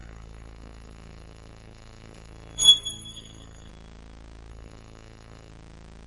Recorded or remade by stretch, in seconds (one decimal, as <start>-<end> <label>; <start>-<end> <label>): 0.0-3.7 remade; 3.7-4.5 recorded; 4.5-5.5 remade; 5.5-6.1 recorded